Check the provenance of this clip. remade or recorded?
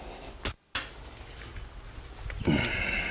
recorded